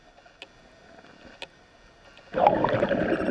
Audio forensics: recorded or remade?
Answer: recorded